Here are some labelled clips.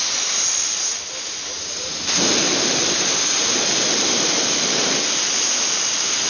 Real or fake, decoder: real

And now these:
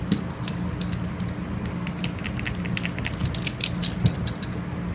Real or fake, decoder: real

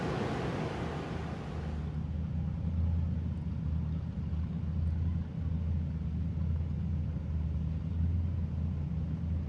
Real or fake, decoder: real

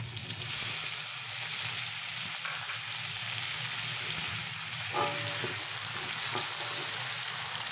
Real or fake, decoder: real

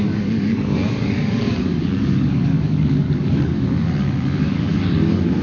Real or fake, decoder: fake, codec, DAC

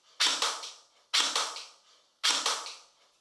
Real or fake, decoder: real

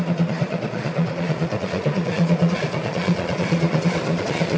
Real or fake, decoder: fake, vocoder, Vocos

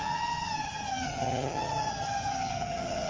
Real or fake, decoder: fake, vocoder, HiFi-GAN